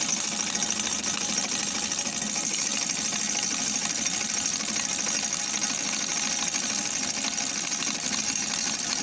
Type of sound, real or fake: real